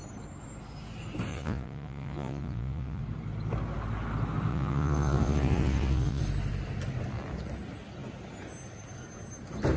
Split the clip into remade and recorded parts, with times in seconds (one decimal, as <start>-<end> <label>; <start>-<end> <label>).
0.0-1.3 recorded; 1.3-3.0 remade; 3.0-4.5 recorded; 4.5-6.2 remade; 6.2-9.8 recorded